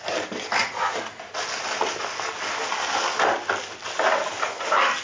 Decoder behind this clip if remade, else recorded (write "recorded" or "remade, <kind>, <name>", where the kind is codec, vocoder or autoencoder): recorded